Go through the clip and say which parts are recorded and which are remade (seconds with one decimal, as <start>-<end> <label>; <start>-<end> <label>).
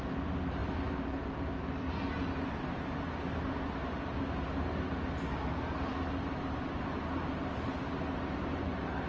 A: 0.0-9.1 recorded